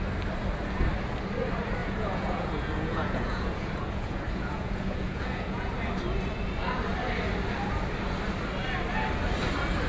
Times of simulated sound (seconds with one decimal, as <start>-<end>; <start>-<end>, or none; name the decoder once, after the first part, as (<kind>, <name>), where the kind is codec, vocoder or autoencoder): 1.8-5.7 (vocoder, Vocos)